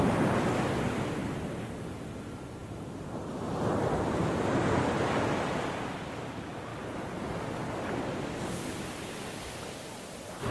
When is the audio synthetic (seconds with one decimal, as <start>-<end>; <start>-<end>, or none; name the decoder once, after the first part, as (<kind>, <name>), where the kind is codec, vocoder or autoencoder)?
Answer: 2.6-4.9 (vocoder, BigVGAN v2)